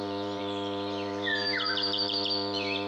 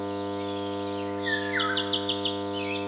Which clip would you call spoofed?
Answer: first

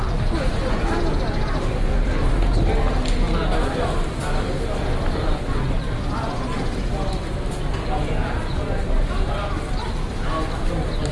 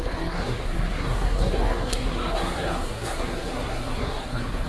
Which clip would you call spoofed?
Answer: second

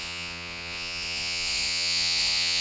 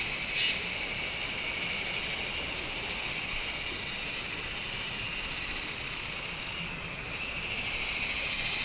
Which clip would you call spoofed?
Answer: first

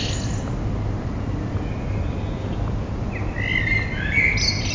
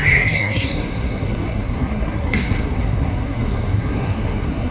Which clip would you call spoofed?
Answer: second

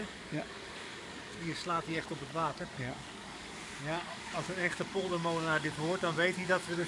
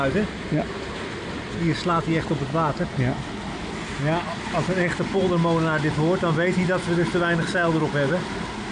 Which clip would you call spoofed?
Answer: first